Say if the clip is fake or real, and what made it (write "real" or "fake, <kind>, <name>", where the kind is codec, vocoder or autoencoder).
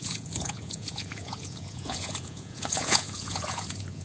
fake, vocoder, Vocos